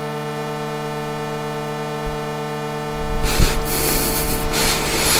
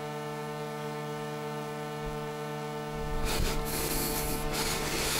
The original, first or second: first